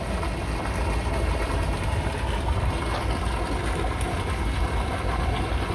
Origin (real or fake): real